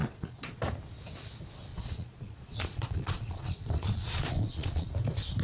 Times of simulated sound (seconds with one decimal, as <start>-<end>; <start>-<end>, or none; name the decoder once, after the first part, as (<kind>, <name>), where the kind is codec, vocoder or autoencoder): 0.0-0.6 (vocoder, Vocos); 1.7-4.9